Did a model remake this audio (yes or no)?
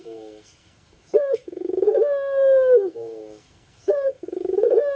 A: yes